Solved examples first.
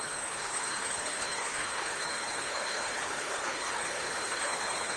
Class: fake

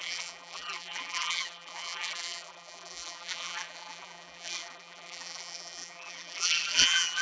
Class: fake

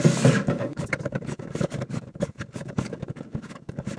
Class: fake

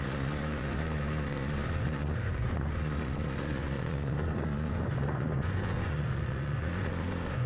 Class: fake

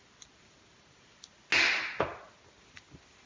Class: real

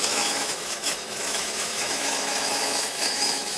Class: fake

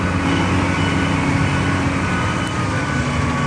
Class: real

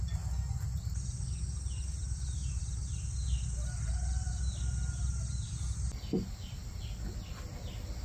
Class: real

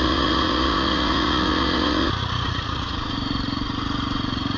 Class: fake